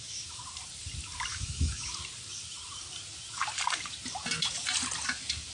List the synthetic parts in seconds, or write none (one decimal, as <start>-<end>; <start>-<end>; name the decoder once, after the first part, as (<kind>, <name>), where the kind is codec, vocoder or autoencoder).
1.3-1.9 (autoencoder, DAC-VAE)